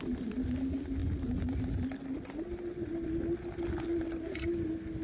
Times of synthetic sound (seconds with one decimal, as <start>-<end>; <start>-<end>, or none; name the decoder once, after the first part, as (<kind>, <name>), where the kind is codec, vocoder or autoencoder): none